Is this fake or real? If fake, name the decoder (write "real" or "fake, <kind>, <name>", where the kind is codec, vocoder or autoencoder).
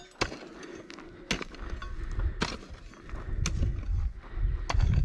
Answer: real